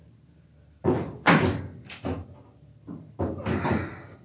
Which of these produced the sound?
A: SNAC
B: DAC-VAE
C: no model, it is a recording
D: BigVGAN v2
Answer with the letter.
C